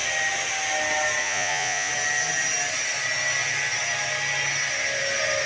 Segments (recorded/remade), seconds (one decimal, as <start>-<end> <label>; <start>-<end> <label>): 0.0-1.2 recorded; 1.2-1.9 remade; 1.9-5.5 recorded